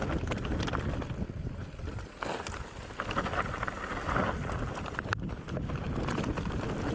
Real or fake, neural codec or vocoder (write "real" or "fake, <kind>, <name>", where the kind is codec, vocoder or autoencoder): real